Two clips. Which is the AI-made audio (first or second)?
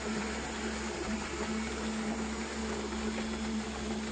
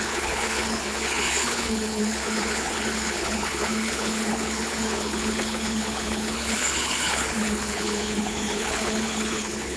second